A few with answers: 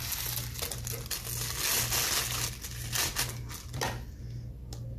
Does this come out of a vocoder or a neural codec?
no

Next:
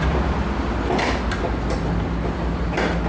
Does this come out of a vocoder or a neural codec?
no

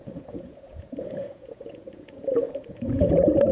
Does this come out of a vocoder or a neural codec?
yes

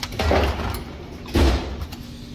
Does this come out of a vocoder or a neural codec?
no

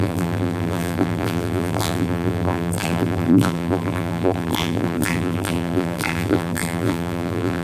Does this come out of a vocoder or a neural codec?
yes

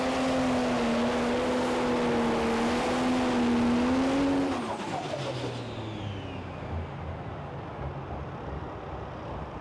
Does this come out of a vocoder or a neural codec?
no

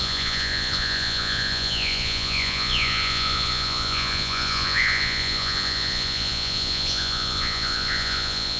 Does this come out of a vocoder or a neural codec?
yes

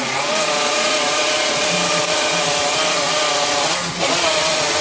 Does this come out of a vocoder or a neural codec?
no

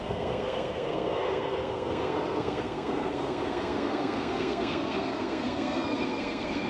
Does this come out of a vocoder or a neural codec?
yes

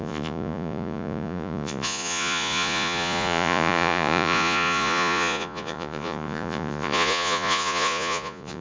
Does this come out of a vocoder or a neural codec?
yes